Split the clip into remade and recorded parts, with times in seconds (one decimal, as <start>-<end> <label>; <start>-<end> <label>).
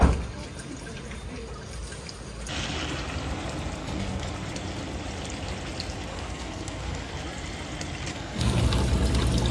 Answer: 0.0-3.8 recorded; 3.8-4.3 remade; 4.3-6.1 recorded; 6.1-7.1 remade; 7.1-8.1 recorded; 8.1-8.6 remade; 8.6-9.5 recorded